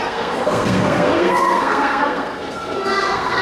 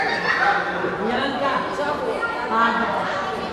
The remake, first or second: first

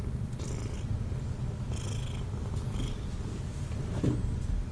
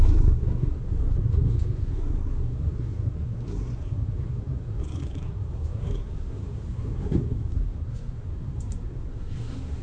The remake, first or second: second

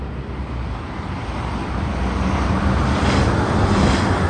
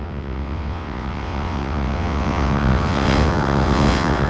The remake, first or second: second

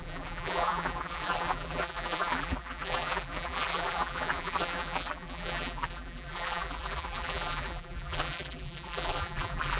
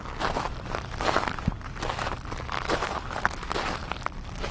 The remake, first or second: first